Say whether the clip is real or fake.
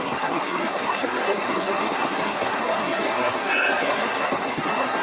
fake